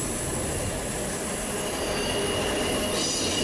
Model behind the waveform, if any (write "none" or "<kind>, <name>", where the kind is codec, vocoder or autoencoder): none